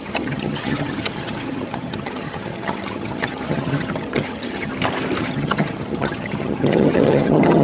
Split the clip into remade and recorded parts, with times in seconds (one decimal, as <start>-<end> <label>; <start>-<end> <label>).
0.0-4.7 remade; 4.7-5.2 recorded; 5.2-7.6 remade